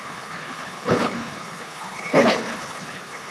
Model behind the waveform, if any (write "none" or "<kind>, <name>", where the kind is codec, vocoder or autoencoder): codec, HILCodec